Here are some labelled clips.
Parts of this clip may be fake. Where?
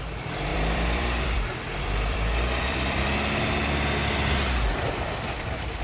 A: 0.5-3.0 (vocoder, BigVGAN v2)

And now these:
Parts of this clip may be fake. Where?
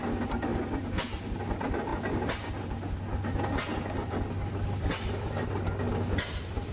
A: 4.0-5.5 (vocoder, BigVGAN v2)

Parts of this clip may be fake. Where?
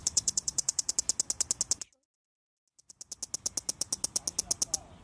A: 0.0-0.9 (vocoder, BigVGAN v2)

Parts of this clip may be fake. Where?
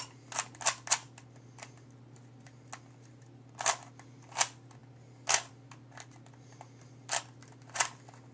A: none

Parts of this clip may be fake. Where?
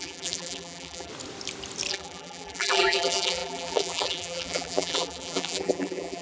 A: 0.0-1.1 (vocoder, BigVGAN v2); 1.9-6.2